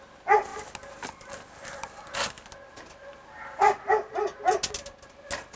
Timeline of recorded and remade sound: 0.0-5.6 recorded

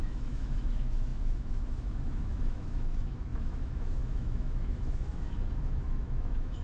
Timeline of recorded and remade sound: 0.0-6.6 remade